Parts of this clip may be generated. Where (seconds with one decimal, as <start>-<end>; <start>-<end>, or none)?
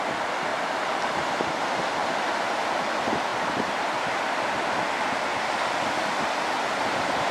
0.5-1.6; 5.3-6.3